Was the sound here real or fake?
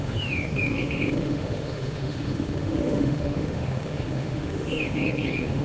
fake